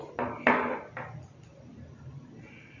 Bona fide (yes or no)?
yes